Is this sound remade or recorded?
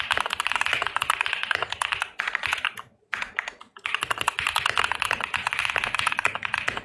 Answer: recorded